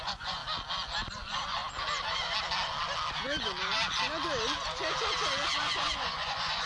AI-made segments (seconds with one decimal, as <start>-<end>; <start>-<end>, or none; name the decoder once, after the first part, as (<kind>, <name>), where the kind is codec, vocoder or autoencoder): 0.0-0.4 (vocoder, Vocos); 1.1-1.6; 5.6-6.7